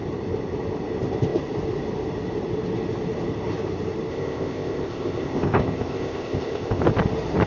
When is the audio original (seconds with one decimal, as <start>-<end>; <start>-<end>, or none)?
0.0-4.1; 6.8-7.5